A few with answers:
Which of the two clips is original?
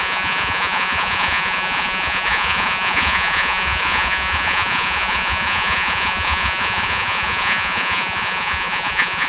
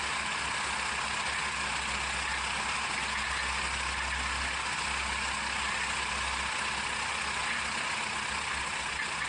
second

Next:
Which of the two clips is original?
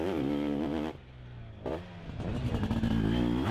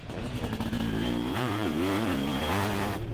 first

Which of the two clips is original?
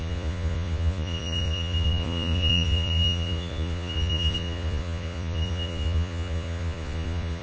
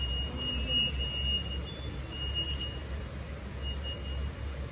second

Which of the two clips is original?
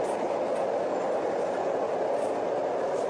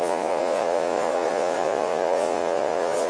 first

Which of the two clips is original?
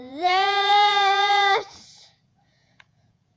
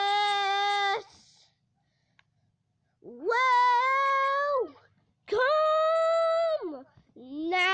second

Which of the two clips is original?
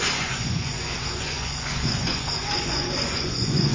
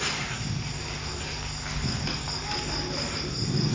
second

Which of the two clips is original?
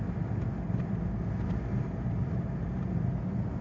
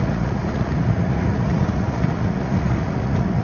first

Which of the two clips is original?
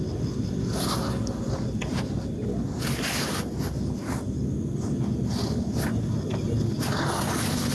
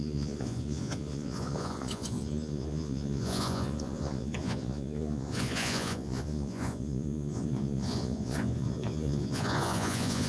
first